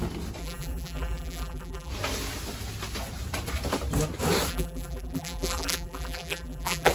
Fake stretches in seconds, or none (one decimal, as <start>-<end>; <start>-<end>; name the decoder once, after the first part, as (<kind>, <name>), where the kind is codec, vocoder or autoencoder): 0.4-1.9 (vocoder, BigVGAN v2); 4.5-6.9